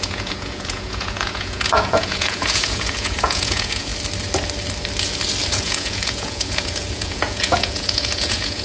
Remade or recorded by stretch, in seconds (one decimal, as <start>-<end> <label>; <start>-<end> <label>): 0.0-3.9 remade; 3.9-5.5 recorded; 5.5-8.6 remade